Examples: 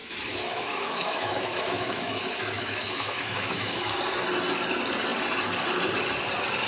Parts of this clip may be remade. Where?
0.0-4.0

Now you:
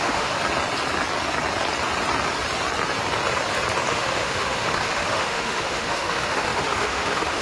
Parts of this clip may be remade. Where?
0.0-0.4; 3.9-7.4

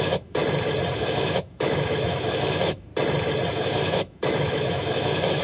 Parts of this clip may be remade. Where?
0.0-0.4; 1.0-2.9; 3.5-5.4

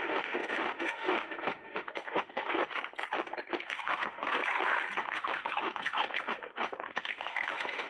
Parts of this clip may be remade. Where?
0.0-2.6; 3.5-4.4; 5.0-7.9

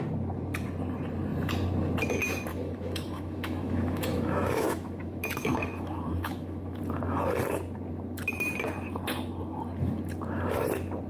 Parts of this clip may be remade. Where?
2.5-6.8